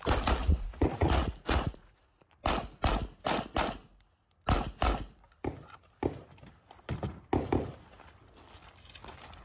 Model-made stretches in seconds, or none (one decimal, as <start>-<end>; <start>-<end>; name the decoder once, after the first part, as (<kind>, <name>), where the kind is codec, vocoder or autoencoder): 0.4-2.2 (vocoder, Vocos)